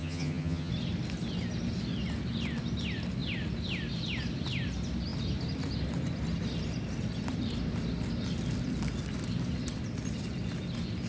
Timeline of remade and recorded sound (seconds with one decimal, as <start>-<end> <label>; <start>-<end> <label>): 0.0-0.7 remade; 0.7-11.1 recorded